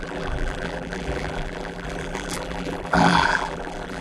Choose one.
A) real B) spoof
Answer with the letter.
B